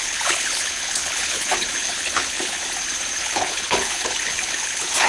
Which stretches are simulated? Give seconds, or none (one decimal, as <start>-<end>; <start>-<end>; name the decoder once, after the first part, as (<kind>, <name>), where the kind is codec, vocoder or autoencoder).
0.0-2.6 (codec, HILCodec); 3.2-5.1